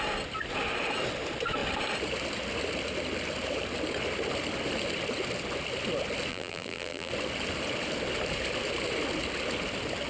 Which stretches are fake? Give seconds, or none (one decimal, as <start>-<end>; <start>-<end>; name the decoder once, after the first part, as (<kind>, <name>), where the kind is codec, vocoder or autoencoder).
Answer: 6.3-7.1 (vocoder, BigVGAN v2)